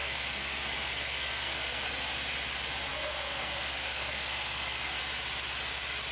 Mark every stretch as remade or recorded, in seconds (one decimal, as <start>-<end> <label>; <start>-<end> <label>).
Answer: 0.0-1.9 remade; 1.9-2.9 recorded; 2.9-5.0 remade; 5.0-6.1 recorded